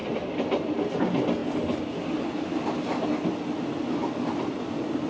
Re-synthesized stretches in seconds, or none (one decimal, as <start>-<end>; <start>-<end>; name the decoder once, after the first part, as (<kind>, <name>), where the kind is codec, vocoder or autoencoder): none